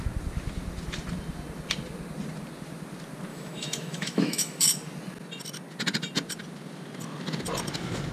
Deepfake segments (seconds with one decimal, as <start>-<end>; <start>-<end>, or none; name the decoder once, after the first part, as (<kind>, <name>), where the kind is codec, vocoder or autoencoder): 3.3-4.6 (autoencoder, DAC-VAE)